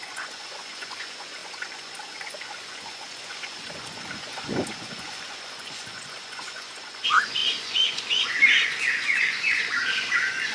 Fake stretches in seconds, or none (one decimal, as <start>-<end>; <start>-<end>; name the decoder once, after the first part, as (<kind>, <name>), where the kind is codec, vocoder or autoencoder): 0.0-10.5 (vocoder, Vocos)